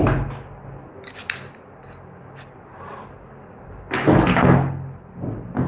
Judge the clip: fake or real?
real